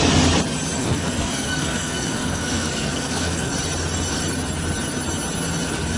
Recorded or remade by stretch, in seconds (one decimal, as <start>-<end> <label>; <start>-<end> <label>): 0.0-0.8 recorded; 0.8-3.5 remade; 3.5-6.0 recorded